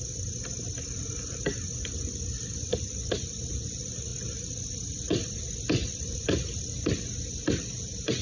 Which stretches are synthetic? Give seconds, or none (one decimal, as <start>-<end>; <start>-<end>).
none